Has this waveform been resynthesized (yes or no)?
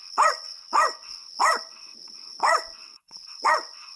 yes